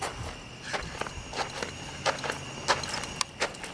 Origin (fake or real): real